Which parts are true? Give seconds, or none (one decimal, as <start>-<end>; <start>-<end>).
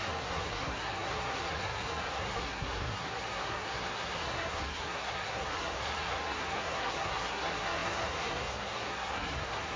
none